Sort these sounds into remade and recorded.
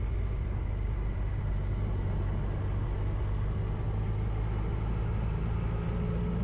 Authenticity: recorded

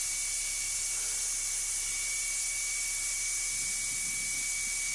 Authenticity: recorded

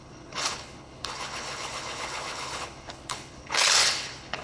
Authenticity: remade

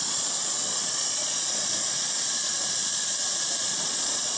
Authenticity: remade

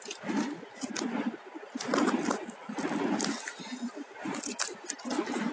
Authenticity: recorded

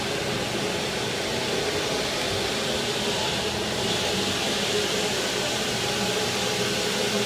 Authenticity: recorded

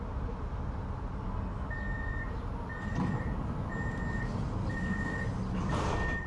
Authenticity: recorded